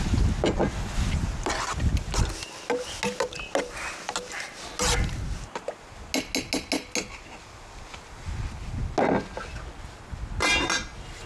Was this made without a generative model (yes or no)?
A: yes